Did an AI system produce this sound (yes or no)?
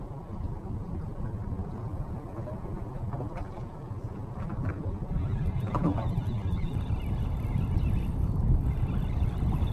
no